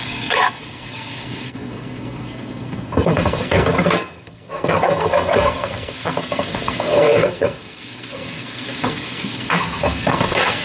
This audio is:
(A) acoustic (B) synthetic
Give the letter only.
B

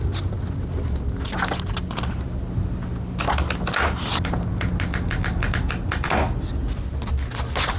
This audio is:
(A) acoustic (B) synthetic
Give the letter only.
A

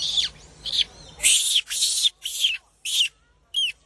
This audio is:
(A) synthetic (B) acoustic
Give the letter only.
B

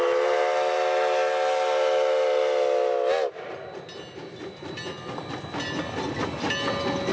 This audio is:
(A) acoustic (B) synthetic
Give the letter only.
A